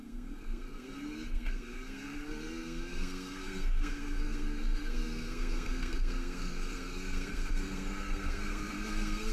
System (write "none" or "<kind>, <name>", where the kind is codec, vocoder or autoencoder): codec, SNAC